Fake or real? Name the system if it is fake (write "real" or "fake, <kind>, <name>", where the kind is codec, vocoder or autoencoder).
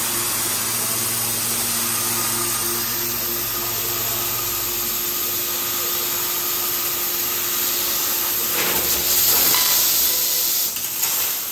real